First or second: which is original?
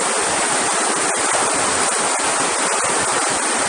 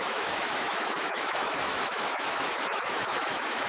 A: first